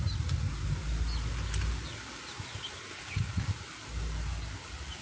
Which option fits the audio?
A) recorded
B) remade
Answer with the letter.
A